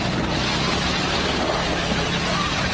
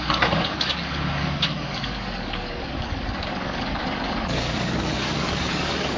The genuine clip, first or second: first